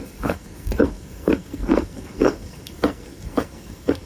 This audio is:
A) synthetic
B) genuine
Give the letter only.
A